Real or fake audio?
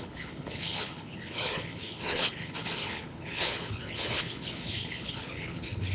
fake